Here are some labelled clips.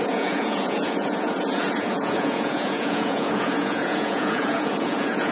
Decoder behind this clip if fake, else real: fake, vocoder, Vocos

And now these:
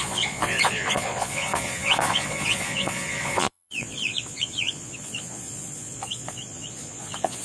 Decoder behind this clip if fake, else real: fake, vocoder, Vocos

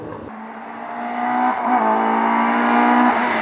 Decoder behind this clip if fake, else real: real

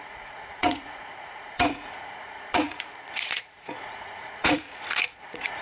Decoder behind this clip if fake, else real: fake, vocoder, Vocos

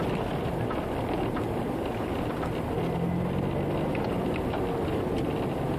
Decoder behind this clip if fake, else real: real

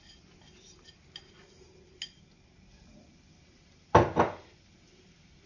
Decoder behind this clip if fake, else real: real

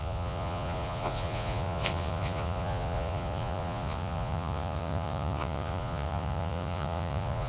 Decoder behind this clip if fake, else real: fake, vocoder, Vocos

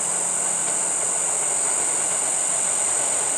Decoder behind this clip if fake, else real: real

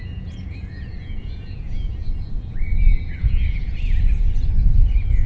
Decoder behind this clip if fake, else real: fake, vocoder, Vocos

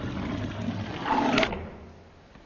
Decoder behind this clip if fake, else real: real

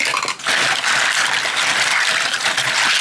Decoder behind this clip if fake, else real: real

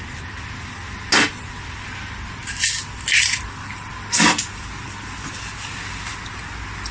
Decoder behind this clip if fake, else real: real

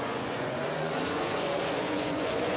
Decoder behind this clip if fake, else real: fake, vocoder, Vocos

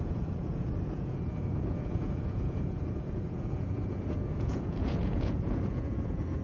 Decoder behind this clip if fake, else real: fake, vocoder, Vocos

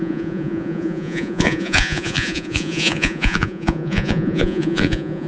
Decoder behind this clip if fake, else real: fake, vocoder, Vocos